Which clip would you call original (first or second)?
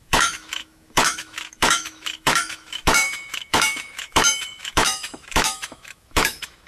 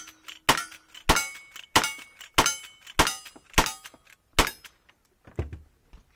second